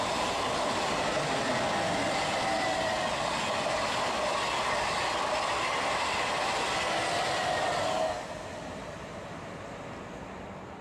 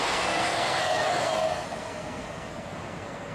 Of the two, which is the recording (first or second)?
first